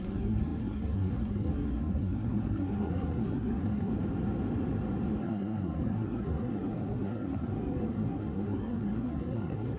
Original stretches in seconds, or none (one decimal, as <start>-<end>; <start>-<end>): 3.9-5.2